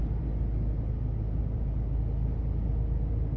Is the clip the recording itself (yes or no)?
yes